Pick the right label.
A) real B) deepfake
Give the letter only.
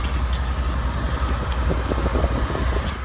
A